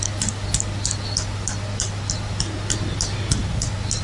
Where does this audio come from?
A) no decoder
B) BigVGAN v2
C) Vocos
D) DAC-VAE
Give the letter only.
A